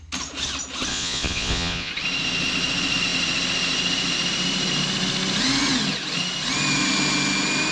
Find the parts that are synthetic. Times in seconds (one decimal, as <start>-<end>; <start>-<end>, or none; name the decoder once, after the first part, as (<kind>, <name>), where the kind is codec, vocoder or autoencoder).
0.9-1.9 (vocoder, Vocos)